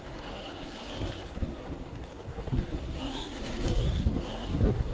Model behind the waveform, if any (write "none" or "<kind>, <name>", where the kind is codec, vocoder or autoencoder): codec, SNAC